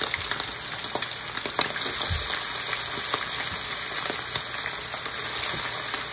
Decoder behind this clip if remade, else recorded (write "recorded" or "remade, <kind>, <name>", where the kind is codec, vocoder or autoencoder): recorded